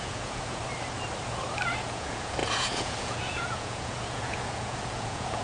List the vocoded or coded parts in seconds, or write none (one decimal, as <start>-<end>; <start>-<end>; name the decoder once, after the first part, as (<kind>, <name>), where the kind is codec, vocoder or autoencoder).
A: 0.0-0.6 (vocoder, Vocos); 1.8-5.4